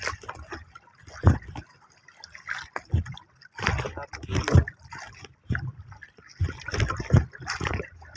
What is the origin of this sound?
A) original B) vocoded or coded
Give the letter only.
A